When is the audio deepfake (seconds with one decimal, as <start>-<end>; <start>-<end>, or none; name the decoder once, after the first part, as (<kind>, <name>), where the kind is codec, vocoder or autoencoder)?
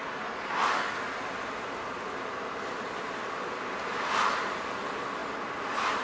none